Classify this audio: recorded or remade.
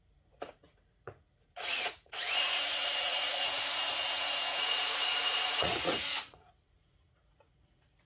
remade